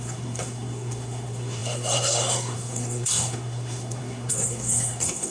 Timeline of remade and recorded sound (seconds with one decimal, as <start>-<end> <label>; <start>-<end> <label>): 0.0-5.3 remade